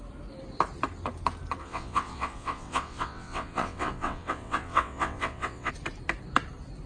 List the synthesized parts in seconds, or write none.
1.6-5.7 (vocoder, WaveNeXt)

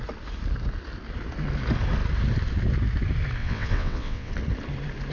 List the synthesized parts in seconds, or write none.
3.4-4.3 (vocoder, WaveNeXt)

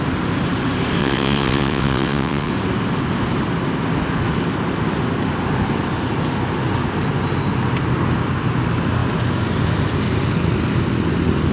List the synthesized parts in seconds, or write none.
1.0-2.5 (vocoder, WaveNeXt)